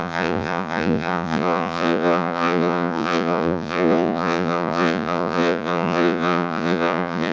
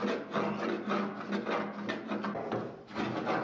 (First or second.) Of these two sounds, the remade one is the first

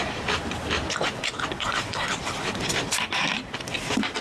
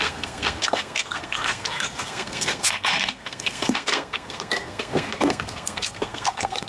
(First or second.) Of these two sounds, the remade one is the second